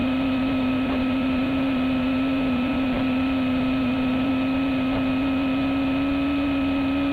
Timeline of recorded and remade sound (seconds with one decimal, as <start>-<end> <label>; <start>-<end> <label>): 0.0-4.3 remade; 4.3-7.1 recorded